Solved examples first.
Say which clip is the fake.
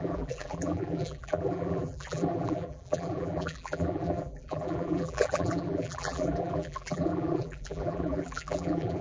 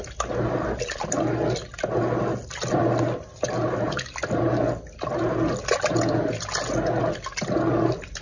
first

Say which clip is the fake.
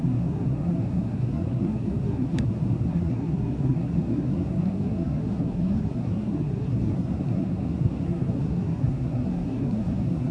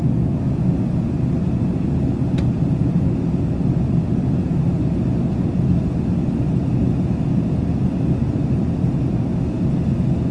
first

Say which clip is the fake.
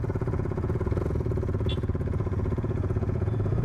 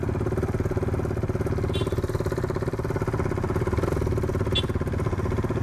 first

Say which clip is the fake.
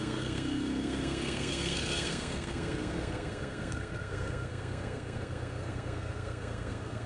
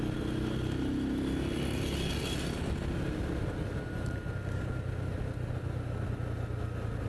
first